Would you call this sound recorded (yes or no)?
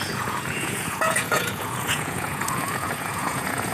no